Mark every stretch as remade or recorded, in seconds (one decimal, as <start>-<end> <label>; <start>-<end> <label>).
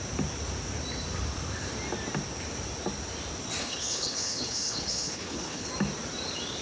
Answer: 0.0-3.6 recorded; 3.6-5.7 remade; 5.7-6.6 recorded